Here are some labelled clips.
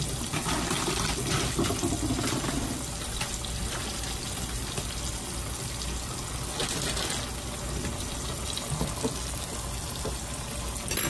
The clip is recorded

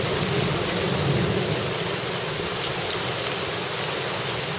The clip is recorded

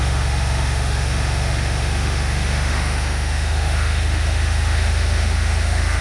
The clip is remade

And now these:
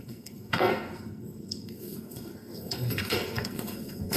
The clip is remade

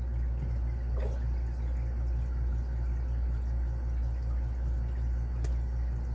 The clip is recorded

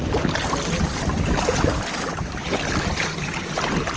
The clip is recorded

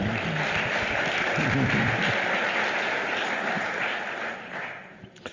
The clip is recorded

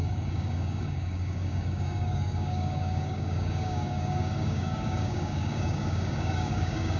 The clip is remade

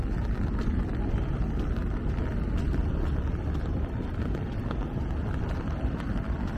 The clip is recorded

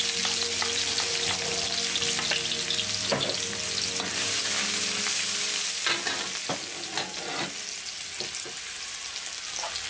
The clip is recorded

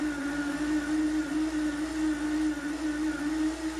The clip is recorded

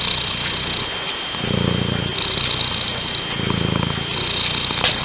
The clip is recorded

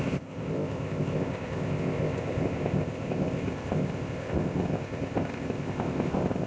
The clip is remade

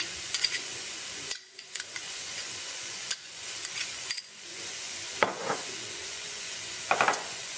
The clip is remade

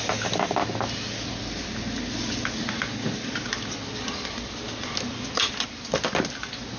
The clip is recorded